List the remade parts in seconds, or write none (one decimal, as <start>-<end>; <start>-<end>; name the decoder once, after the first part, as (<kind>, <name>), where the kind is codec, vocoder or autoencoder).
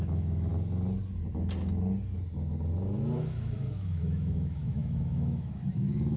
0.0-0.5 (autoencoder, DAC-VAE); 3.2-6.2